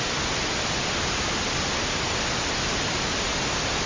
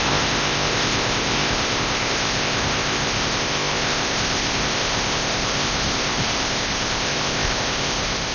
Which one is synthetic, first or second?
second